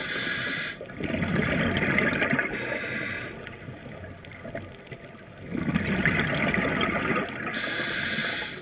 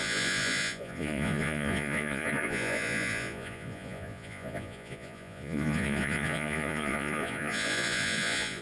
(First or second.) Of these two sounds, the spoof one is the second